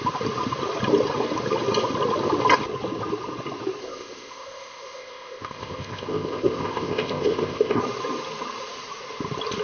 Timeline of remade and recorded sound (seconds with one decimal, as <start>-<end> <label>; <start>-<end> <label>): 0.0-3.8 recorded; 3.8-7.8 remade; 7.8-9.6 recorded